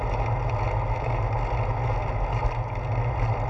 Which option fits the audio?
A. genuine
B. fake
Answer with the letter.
A